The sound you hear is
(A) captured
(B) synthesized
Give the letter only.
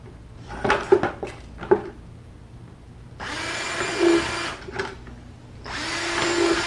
A